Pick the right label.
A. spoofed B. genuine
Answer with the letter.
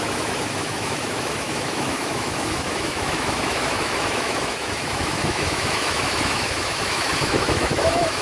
A